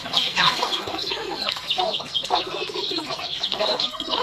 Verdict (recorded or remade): remade